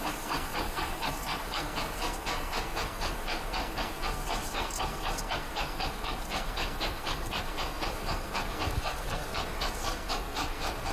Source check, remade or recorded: remade